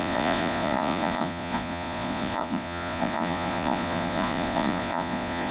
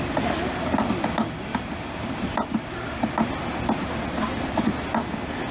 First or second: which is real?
second